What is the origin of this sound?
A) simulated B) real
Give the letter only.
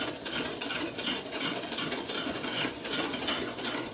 A